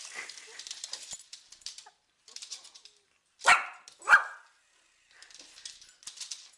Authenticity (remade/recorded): recorded